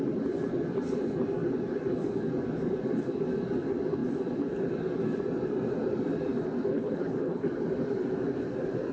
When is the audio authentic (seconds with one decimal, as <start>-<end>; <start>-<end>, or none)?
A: 0.0-6.7; 7.5-8.9